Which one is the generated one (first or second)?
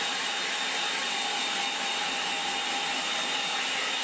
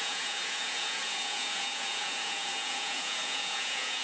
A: second